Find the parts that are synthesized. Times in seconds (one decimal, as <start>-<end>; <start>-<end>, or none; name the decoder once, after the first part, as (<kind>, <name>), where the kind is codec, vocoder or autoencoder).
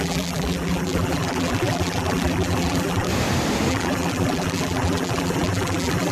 0.0-3.1 (vocoder, BigVGAN v2); 3.7-6.1